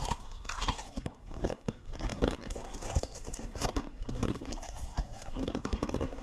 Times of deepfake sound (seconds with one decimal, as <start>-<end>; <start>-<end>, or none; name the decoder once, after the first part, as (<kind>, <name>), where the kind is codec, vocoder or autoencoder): 0.0-6.2 (codec, SNAC)